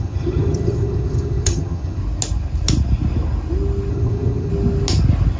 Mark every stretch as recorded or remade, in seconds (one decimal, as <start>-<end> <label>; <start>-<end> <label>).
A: 0.0-2.0 remade; 2.0-3.9 recorded; 3.9-4.5 remade; 4.5-5.4 recorded